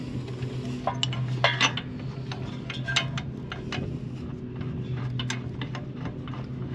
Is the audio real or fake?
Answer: real